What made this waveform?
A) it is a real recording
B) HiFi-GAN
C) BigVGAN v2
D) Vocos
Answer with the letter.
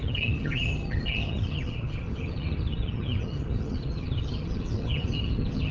B